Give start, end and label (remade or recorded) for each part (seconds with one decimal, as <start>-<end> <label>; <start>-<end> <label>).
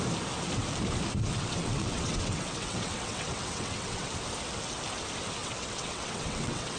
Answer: 0.0-1.4 recorded; 1.4-4.1 remade; 4.1-5.4 recorded; 5.4-6.8 remade